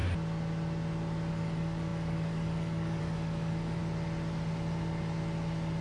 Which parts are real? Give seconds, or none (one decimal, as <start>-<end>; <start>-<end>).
0.0-1.3; 3.8-5.8